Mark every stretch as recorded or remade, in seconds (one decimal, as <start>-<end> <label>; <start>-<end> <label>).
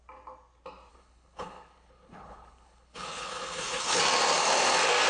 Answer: 0.0-0.9 recorded; 0.9-4.0 remade; 4.0-5.1 recorded